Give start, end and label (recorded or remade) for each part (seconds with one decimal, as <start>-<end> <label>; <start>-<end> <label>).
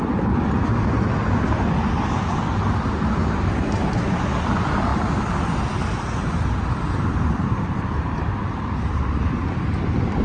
0.0-10.2 recorded